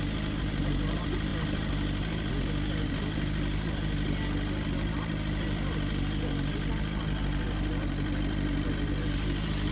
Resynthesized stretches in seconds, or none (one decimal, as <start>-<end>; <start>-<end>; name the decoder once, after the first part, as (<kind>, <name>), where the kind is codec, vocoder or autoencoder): none